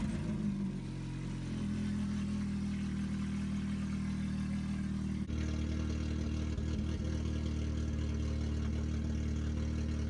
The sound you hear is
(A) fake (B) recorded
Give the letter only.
B